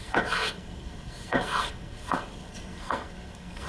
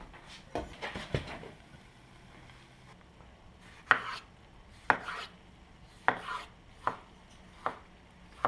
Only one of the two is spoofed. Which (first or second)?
first